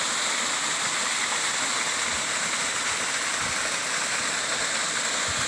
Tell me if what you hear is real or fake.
real